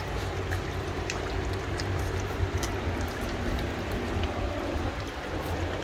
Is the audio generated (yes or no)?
no